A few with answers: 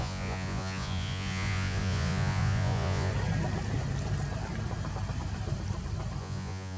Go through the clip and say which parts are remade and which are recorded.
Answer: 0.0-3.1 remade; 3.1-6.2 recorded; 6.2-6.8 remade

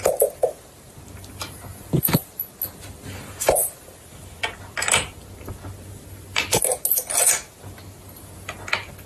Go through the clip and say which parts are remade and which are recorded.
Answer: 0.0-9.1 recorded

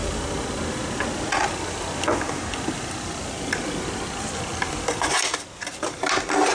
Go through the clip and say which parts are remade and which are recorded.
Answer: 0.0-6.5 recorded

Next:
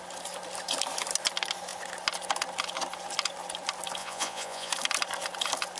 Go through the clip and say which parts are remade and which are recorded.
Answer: 0.0-4.0 recorded; 4.0-4.7 remade; 4.7-5.8 recorded

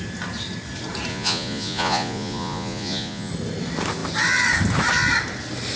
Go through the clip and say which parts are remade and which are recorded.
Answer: 0.0-1.1 recorded; 1.1-3.3 remade; 3.3-5.8 recorded

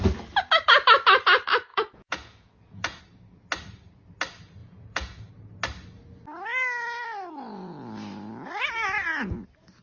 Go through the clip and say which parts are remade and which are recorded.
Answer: 0.0-1.7 recorded; 1.7-3.0 remade; 3.0-4.6 recorded; 4.6-5.3 remade; 5.3-9.8 recorded

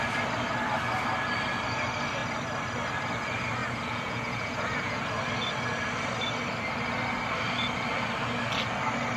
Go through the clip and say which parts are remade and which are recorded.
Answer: 0.0-3.6 recorded; 3.6-5.0 remade; 5.0-9.2 recorded